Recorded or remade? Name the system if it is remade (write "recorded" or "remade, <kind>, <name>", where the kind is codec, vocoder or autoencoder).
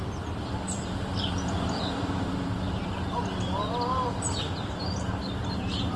remade, vocoder, BigVGAN v2